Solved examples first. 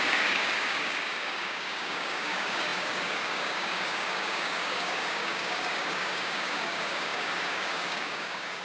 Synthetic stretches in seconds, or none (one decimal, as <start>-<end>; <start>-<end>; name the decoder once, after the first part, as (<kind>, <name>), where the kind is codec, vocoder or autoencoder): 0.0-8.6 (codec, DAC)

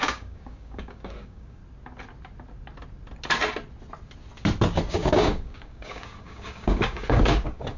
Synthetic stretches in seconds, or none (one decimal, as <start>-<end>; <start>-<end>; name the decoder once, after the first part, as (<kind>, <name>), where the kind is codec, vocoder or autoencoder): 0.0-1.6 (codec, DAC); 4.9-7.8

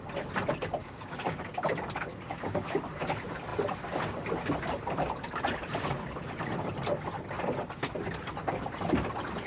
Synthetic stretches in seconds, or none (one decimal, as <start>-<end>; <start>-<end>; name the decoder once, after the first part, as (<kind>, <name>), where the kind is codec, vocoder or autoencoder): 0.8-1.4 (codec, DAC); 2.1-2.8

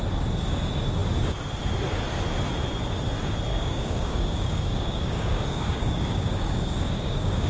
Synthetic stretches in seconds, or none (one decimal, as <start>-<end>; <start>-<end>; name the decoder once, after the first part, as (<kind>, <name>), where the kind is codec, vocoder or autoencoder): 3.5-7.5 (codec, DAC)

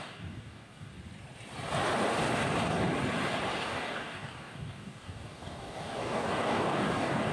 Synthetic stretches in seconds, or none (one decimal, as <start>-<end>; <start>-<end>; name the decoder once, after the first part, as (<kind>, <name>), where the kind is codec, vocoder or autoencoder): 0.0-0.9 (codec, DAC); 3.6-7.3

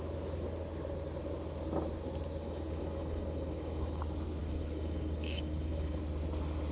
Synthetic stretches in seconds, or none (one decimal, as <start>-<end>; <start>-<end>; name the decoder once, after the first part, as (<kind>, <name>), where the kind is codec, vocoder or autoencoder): 2.4-4.0 (codec, DAC); 4.4-6.0

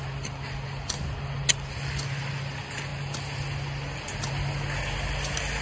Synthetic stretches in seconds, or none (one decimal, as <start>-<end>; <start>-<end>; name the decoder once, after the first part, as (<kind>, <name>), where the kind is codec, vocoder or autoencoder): none